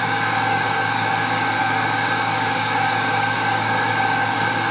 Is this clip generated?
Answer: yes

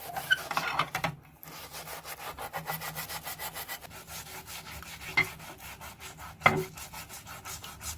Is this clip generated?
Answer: no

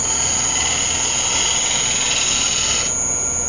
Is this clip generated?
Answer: no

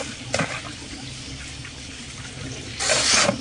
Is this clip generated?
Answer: no